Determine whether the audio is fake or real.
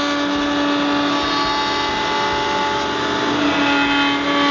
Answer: real